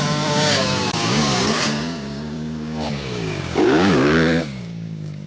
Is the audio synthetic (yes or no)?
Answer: yes